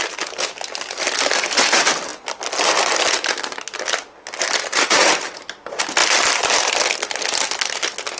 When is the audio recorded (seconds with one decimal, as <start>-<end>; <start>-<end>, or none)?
0.0-8.2